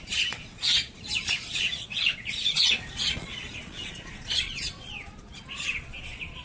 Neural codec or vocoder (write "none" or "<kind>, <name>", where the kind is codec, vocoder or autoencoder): vocoder, Vocos